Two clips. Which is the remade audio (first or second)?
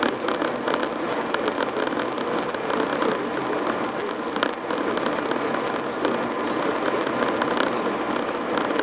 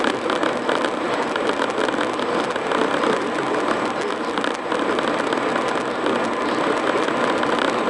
second